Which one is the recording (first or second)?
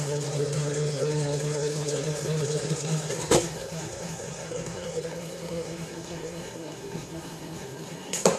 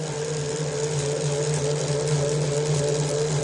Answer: second